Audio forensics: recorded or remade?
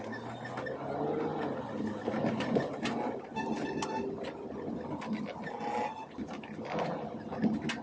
recorded